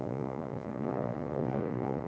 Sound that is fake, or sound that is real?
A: fake